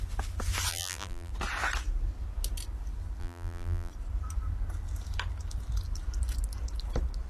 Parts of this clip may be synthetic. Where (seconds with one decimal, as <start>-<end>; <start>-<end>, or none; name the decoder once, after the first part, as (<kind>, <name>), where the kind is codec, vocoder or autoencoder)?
0.7-1.3 (vocoder, BigVGAN v2); 3.2-3.9